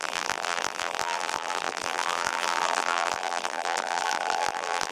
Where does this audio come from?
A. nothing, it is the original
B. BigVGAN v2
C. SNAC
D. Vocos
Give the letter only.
B